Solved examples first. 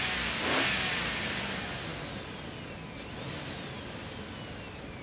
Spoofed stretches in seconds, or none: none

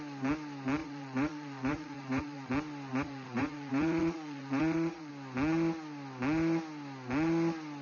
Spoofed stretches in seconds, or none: 0.8-2.5 (vocoder, Vocos); 2.9-5.1

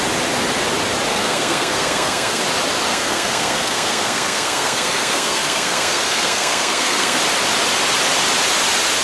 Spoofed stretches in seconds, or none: 1.1-2.4 (codec, SNAC); 2.9-7.2

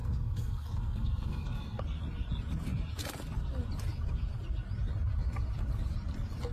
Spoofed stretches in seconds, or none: 0.0-1.8 (codec, SNAC)

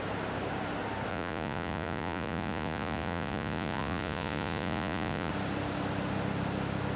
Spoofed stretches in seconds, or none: 1.1-5.3 (vocoder, Vocos)

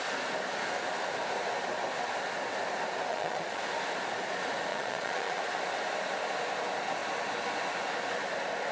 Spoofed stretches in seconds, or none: 3.1-3.6 (vocoder, Vocos); 4.7-5.4

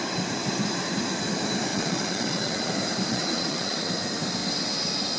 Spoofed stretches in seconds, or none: 1.7-2.7 (vocoder, Vocos); 3.1-3.9